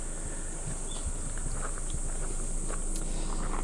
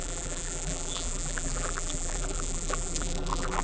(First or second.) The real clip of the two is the first